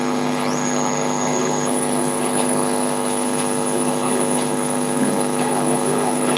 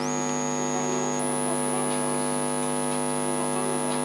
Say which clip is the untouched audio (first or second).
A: second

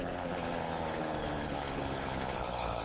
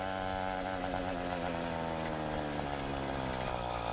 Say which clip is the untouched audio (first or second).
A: second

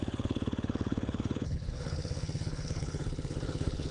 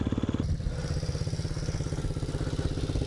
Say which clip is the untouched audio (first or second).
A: second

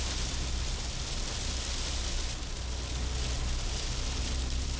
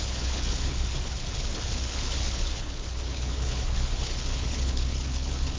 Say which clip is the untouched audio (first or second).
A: first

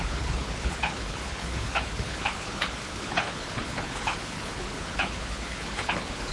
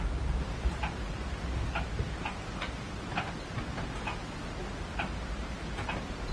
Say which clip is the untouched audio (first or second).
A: second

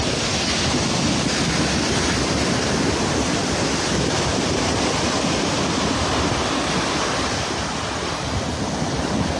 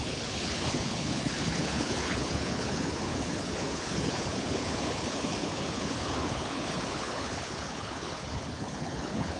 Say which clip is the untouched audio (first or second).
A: first